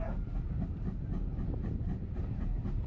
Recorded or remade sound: recorded